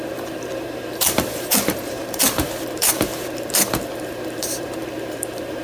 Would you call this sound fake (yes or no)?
yes